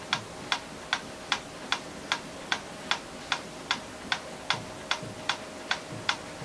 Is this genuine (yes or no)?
yes